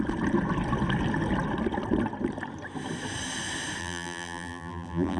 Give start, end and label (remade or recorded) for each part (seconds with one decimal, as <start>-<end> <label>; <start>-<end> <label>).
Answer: 0.0-3.8 recorded; 3.8-5.2 remade